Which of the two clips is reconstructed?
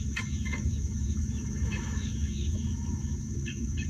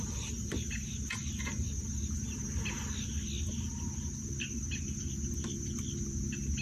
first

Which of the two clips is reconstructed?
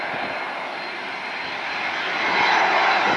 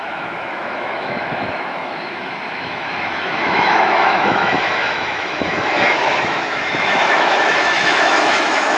second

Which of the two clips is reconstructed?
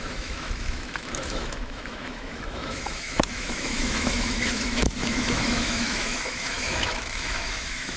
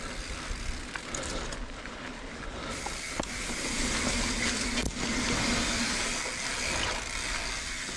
first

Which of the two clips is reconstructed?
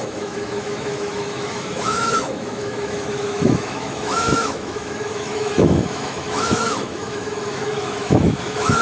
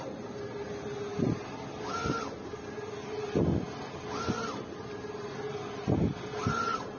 first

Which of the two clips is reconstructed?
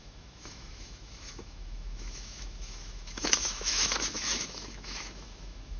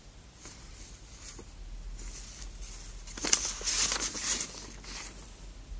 first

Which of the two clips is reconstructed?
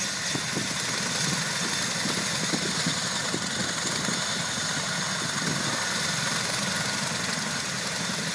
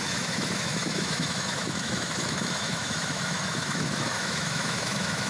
second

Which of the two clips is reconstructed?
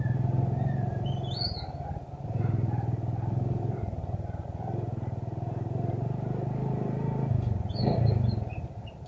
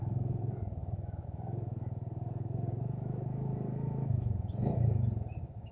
second